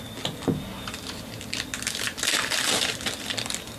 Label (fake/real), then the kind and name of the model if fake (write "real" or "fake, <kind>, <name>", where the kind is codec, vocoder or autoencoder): real